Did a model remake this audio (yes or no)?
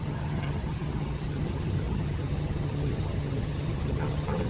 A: yes